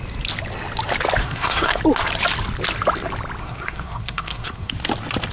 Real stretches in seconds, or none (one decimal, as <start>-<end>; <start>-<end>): 0.0-1.2; 1.8-3.4; 4.7-5.3